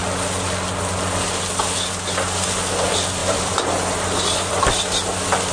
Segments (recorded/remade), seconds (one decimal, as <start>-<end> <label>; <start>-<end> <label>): 0.0-3.2 recorded; 3.2-4.7 remade; 4.7-5.5 recorded